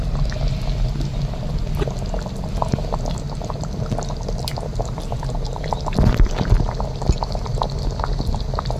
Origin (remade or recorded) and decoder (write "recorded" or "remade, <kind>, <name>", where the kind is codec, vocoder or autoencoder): recorded